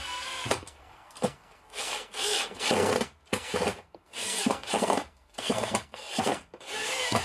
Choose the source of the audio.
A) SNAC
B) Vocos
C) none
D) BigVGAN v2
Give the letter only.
A